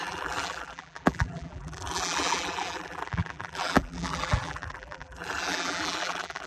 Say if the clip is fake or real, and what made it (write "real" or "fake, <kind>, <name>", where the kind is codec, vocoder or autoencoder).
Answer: fake, vocoder, BigVGAN v2